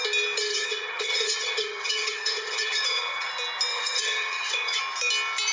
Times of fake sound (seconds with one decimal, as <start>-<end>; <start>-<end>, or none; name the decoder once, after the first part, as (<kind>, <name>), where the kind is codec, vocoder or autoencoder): 0.5-3.3 (vocoder, HiFi-GAN); 3.7-4.8

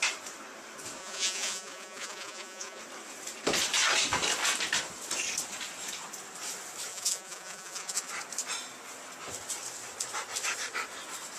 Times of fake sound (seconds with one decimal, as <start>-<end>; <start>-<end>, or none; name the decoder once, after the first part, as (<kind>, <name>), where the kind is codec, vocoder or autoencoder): 1.0-2.8 (vocoder, Vocos); 6.9-8.1

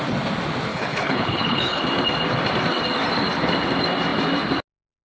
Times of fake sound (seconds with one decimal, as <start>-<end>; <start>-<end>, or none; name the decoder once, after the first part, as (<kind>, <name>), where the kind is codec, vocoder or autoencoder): 0.7-1.8 (codec, HILCodec)